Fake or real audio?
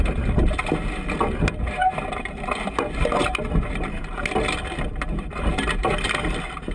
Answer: real